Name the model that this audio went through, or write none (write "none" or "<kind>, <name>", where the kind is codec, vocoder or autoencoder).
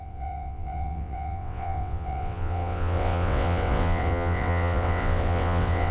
vocoder, WaveNeXt